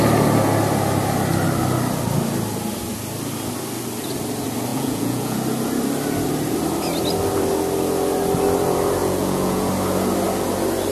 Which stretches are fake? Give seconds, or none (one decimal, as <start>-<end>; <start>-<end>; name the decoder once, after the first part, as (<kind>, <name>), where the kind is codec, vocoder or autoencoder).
4.7-5.4 (vocoder, Vocos); 9.0-9.7